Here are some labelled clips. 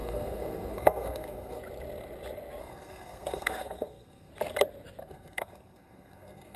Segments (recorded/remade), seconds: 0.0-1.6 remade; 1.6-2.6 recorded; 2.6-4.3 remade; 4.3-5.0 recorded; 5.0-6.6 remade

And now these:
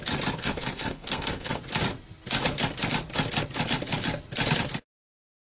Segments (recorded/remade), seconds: 0.0-0.4 recorded; 0.4-1.6 remade; 1.6-5.6 recorded